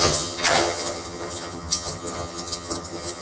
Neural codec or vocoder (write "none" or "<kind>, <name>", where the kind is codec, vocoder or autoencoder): vocoder, HiFi-GAN